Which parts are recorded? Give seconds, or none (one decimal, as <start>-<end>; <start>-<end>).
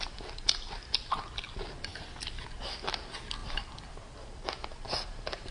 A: 0.0-5.5